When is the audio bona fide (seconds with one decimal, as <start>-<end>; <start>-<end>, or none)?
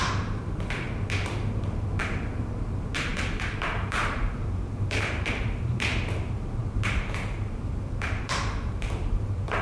0.0-2.0